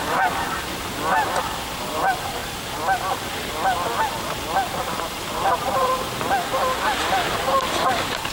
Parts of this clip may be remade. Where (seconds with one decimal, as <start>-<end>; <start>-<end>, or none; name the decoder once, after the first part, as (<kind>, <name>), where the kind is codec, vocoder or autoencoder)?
0.0-2.4 (vocoder, BigVGAN v2); 4.1-5.9; 7.4-8.3